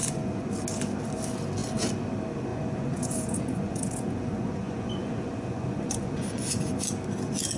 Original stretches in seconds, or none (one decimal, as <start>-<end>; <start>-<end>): 0.5-2.5; 6.8-7.6